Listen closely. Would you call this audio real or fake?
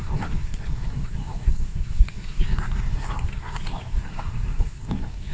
fake